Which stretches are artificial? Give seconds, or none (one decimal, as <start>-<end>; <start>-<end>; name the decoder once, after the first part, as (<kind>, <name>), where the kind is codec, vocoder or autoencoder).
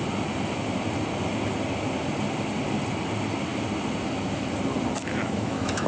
5.0-5.9 (autoencoder, DAC-VAE)